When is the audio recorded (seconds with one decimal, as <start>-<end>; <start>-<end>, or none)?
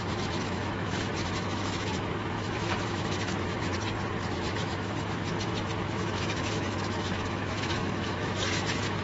3.7-4.3